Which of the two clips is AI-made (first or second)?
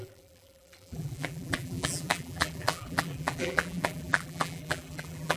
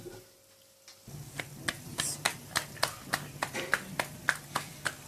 first